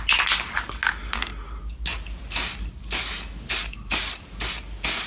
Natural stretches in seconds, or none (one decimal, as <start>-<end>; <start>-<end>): 0.0-5.1